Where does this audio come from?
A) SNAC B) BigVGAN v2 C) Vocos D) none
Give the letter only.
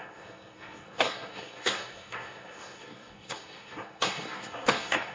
A